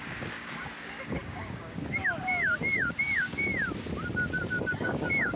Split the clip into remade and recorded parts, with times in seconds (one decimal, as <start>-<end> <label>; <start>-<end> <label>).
0.0-3.5 remade; 3.5-4.6 recorded; 4.6-5.4 remade